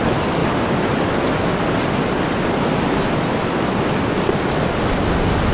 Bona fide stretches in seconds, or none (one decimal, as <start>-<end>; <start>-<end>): 0.0-5.5